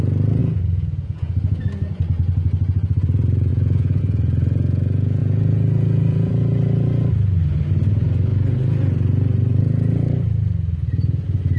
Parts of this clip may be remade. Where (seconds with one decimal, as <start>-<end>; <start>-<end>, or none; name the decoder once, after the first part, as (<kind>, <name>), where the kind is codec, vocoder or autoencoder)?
0.4-1.6 (vocoder, Vocos); 3.5-4.0; 5.2-6.3